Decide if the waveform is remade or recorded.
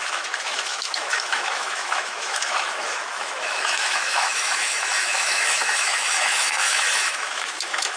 remade